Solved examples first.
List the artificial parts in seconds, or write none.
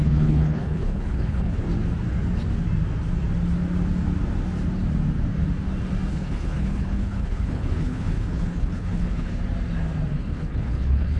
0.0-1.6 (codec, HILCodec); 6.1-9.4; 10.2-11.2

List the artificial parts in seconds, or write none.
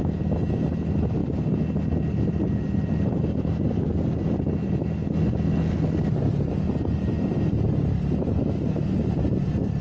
none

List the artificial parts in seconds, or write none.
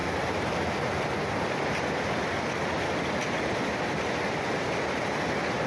none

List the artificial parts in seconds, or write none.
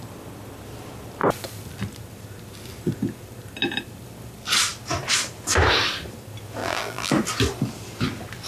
6.6-7.1 (vocoder, BigVGAN v2)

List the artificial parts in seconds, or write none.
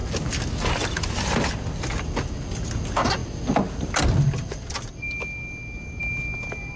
none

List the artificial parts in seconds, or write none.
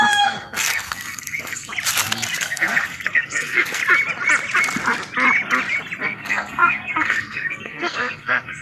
0.0-1.7 (codec, SNAC); 2.4-3.8; 6.0-8.6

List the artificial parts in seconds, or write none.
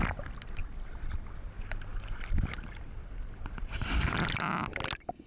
none